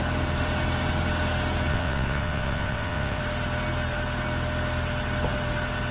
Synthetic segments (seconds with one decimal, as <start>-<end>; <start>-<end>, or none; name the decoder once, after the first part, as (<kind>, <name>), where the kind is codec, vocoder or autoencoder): 1.7-3.2 (vocoder, WaveNeXt)